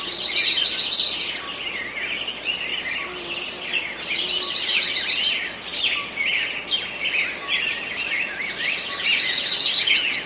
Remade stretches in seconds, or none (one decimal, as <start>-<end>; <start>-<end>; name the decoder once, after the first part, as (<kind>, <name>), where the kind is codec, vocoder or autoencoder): none